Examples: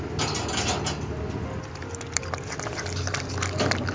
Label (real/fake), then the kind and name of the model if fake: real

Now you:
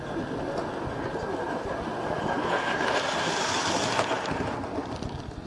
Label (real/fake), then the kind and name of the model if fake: real